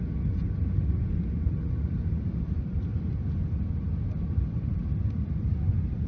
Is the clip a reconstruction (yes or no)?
no